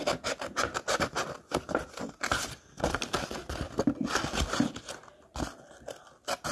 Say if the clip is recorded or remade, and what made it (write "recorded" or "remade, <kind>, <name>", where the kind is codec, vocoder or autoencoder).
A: recorded